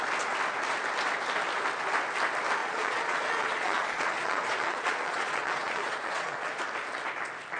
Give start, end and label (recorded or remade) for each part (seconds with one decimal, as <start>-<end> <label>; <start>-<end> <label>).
0.0-2.6 recorded; 2.6-6.6 remade; 6.6-7.6 recorded

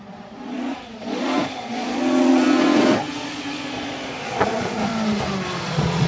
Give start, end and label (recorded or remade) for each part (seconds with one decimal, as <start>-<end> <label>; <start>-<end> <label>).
0.0-4.9 remade; 4.9-5.6 recorded; 5.6-6.1 remade

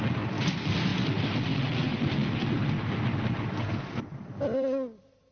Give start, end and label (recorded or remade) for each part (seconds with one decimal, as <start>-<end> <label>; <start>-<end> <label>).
0.0-5.3 recorded

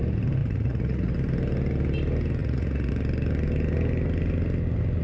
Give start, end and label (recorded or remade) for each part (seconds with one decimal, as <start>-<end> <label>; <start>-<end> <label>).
0.0-0.4 recorded; 0.4-1.1 remade; 1.1-2.4 recorded; 2.4-2.9 remade; 2.9-5.0 recorded

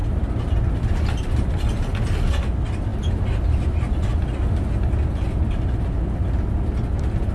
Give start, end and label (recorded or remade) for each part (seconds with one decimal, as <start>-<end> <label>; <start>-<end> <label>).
0.0-7.3 recorded

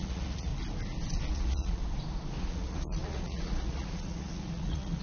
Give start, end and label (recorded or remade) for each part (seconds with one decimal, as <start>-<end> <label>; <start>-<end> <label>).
0.0-0.5 remade; 0.5-1.3 recorded; 1.3-1.8 remade; 1.8-2.4 recorded; 2.4-5.0 remade

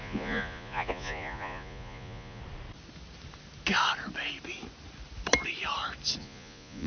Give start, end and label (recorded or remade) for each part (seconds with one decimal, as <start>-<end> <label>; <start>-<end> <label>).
0.0-2.4 remade; 2.4-6.2 recorded; 6.2-6.9 remade

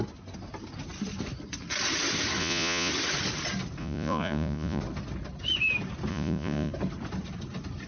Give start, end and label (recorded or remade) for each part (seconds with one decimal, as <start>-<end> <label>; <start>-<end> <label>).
0.0-2.4 recorded; 2.4-2.9 remade; 2.9-3.8 recorded; 3.8-4.8 remade; 4.8-6.1 recorded; 6.1-6.7 remade; 6.7-7.9 recorded